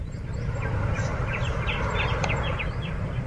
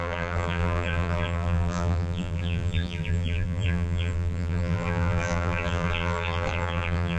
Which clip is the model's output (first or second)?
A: second